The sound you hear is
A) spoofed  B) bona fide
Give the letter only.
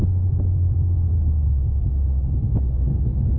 B